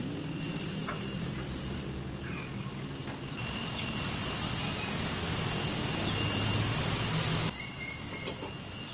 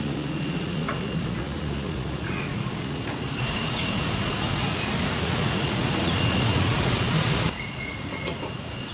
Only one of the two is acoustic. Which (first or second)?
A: first